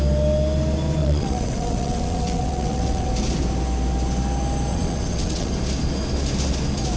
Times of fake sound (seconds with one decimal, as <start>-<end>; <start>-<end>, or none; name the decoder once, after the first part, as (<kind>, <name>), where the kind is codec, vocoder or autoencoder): 1.0-3.1 (vocoder, WaveNeXt); 4.7-5.5